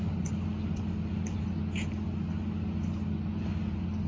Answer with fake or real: real